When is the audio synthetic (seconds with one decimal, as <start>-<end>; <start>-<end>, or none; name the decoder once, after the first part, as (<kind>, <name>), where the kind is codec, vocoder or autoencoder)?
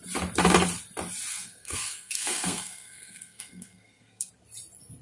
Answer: 1.3-4.3 (codec, SNAC)